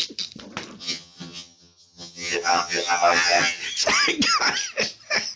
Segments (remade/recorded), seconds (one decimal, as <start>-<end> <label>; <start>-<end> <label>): 0.0-0.8 recorded; 0.8-3.6 remade; 3.6-5.4 recorded